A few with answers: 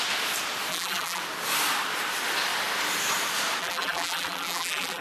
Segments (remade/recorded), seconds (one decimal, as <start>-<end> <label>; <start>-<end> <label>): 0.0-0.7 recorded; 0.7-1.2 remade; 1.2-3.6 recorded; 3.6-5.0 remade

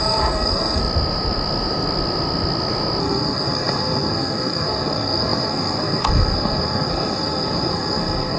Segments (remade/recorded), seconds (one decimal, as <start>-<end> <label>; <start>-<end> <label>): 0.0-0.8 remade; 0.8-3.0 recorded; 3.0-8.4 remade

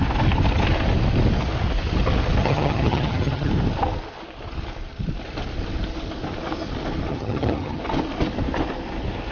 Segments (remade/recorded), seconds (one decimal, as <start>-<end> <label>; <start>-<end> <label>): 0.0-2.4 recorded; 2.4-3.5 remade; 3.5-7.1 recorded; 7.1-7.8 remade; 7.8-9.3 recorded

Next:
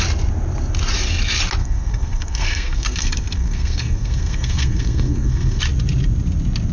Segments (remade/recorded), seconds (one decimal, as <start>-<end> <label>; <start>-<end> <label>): 0.0-1.6 recorded; 1.6-5.6 remade; 5.6-6.7 recorded

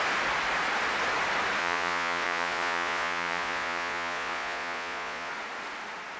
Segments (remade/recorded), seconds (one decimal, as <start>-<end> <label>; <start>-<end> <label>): 0.0-1.6 recorded; 1.6-5.3 remade; 5.3-6.2 recorded

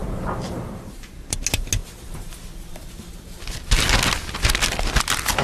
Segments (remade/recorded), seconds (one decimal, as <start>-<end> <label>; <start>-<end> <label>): 0.0-5.4 recorded

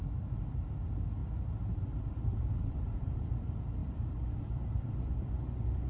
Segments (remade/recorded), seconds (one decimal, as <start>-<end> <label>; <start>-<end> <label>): 0.0-1.2 recorded; 1.2-3.3 remade; 3.3-3.8 recorded; 3.8-5.3 remade; 5.3-5.9 recorded

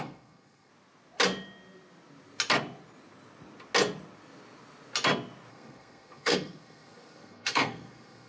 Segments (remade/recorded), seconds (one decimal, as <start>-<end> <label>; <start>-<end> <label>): 0.0-0.7 remade; 0.7-5.5 recorded; 5.5-8.3 remade